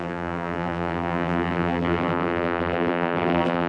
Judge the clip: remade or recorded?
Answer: remade